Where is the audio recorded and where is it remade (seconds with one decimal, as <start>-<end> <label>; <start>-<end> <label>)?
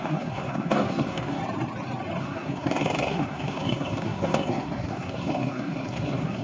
0.0-1.4 remade; 1.4-2.2 recorded; 2.2-6.4 remade